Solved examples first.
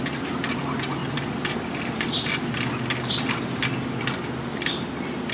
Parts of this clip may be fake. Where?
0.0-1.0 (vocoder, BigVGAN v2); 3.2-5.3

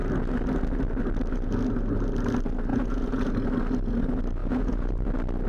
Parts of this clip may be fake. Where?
2.7-3.3 (vocoder, Vocos); 4.4-5.1

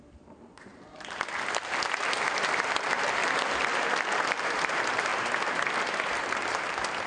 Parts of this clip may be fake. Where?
0.0-0.7 (vocoder, BigVGAN v2); 2.4-3.2; 4.3-5.1; 6.5-7.1

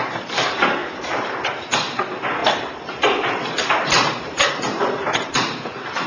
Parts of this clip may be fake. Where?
0.0-0.8 (vocoder, BigVGAN v2); 1.5-6.1

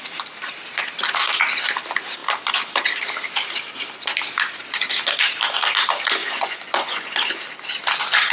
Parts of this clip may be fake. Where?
6.2-7.3 (vocoder, Vocos)